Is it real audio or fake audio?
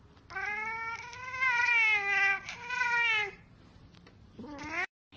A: real